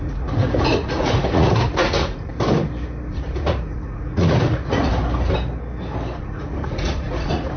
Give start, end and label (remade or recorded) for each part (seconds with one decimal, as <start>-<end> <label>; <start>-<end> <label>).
0.0-2.3 remade; 2.3-3.1 recorded; 3.1-4.9 remade; 4.9-6.2 recorded; 6.2-7.6 remade